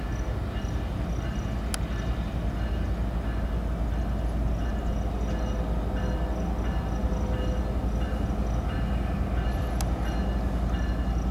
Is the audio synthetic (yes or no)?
no